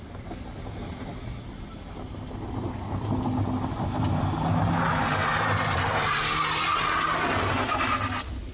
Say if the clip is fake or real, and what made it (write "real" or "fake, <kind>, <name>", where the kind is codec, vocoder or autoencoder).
real